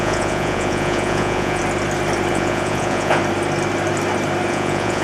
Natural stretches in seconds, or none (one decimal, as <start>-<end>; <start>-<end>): 1.6-2.3; 3.2-4.5

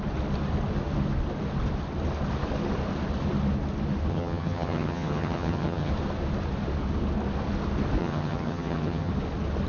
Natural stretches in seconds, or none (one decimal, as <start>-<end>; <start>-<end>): 0.0-4.1; 5.9-8.0; 9.1-9.7

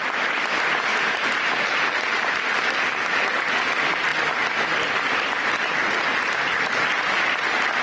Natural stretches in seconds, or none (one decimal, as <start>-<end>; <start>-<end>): 0.0-0.9; 3.4-7.8

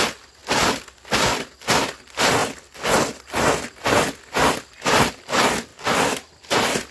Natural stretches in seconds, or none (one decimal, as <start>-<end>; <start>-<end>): 0.0-6.9